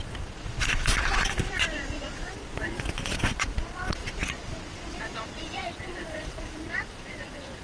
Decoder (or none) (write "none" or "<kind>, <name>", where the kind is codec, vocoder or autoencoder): vocoder, Vocos